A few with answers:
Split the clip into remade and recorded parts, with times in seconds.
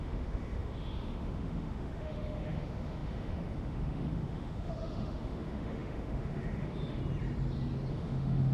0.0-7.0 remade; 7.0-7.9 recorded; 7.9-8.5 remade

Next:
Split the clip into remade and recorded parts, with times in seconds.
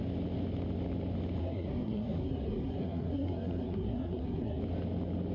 0.0-1.4 recorded; 1.4-4.6 remade; 4.6-5.3 recorded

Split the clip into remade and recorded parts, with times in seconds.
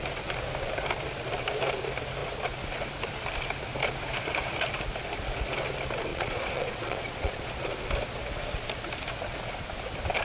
0.0-6.1 recorded; 6.1-7.7 remade; 7.7-10.2 recorded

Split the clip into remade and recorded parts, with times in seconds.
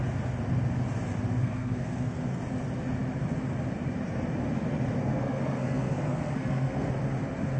0.0-1.4 recorded; 1.4-2.4 remade; 2.4-5.0 recorded; 5.0-6.9 remade; 6.9-7.6 recorded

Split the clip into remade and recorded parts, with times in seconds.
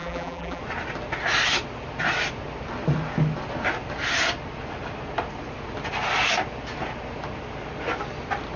0.0-0.6 remade; 0.6-8.6 recorded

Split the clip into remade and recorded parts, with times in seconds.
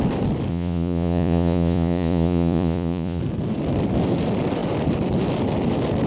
0.0-0.5 recorded; 0.5-3.2 remade; 3.2-6.1 recorded